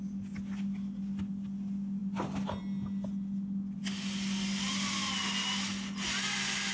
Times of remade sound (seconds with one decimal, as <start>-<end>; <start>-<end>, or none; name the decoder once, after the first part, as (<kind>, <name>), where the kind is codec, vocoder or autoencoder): none